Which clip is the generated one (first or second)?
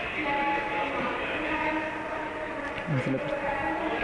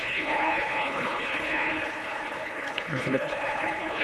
second